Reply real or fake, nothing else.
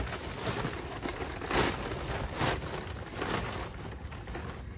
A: real